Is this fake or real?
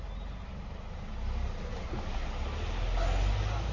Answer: real